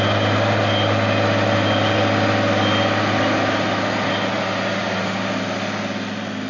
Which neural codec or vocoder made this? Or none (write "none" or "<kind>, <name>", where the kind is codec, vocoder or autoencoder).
none